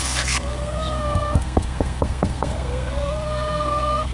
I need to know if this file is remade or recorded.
remade